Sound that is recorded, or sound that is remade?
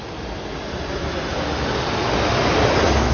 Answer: recorded